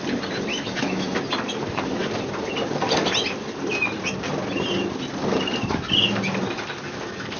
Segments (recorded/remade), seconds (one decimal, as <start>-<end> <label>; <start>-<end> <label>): 0.0-0.5 recorded; 0.5-1.2 remade; 1.2-7.4 recorded

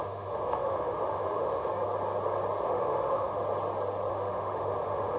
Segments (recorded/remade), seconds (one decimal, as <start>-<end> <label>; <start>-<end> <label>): 0.0-1.7 remade; 1.7-2.6 recorded; 2.6-3.4 remade; 3.4-4.1 recorded; 4.1-5.2 remade

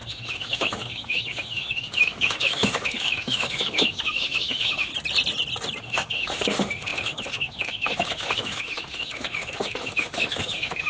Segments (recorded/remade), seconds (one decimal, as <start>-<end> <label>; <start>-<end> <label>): 0.0-4.9 remade; 4.9-5.8 recorded; 5.8-10.9 remade

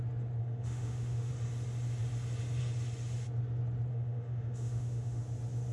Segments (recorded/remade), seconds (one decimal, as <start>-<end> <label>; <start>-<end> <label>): 0.0-0.4 recorded; 0.4-1.3 remade; 1.3-3.9 recorded; 3.9-5.2 remade; 5.2-5.7 recorded

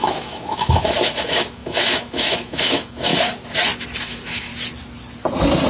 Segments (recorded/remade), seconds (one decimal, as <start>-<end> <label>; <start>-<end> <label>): 0.0-3.1 remade; 3.1-4.0 recorded; 4.0-4.5 remade; 4.5-5.7 recorded

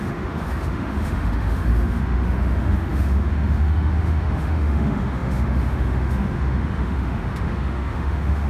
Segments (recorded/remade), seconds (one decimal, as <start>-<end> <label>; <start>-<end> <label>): 0.0-8.5 remade